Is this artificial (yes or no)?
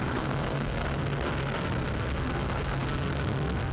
yes